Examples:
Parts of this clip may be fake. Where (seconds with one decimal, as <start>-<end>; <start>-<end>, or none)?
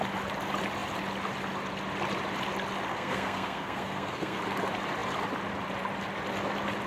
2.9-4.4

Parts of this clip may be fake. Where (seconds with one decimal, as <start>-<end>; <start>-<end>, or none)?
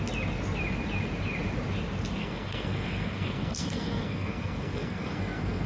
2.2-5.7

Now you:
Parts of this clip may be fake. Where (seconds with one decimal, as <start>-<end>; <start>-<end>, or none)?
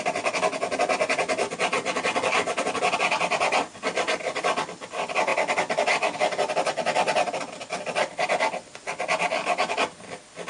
none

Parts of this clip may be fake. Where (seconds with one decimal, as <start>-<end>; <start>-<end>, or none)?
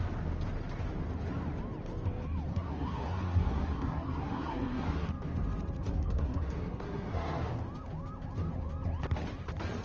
2.5-5.1; 5.8-7.5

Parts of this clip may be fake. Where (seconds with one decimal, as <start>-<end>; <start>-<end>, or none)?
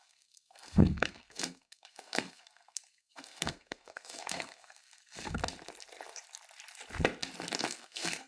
0.0-5.4; 7.6-8.3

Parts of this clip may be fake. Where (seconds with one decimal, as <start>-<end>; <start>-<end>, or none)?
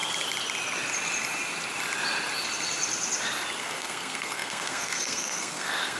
3.6-6.0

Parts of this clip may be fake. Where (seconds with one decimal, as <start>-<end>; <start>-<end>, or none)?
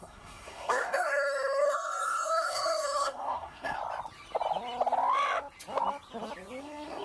0.0-3.8; 6.6-7.0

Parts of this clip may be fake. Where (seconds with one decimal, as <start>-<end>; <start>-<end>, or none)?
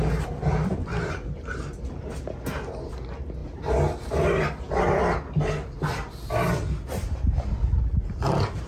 none